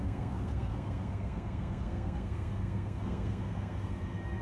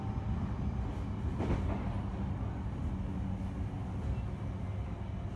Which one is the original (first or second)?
second